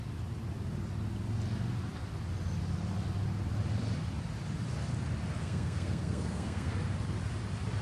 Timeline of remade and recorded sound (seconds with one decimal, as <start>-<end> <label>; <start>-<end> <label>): 0.0-5.4 recorded; 5.4-6.7 remade; 6.7-7.8 recorded